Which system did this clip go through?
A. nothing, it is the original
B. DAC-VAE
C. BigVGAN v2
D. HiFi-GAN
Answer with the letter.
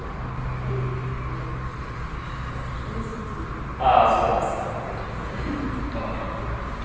A